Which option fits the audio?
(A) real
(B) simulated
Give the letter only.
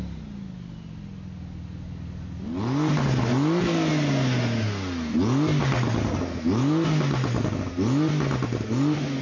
A